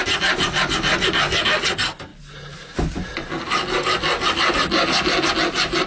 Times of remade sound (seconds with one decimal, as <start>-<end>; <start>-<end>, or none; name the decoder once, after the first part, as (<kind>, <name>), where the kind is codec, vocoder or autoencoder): none